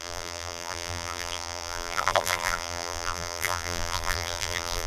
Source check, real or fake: fake